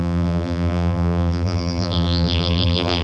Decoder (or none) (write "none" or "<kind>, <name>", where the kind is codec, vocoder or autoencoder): vocoder, BigVGAN v2